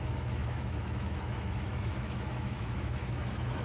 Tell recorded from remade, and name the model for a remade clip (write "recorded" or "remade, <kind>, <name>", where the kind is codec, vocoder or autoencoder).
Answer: remade, autoencoder, DAC-VAE